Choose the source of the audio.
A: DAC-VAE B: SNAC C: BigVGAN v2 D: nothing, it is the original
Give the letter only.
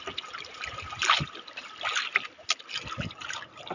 D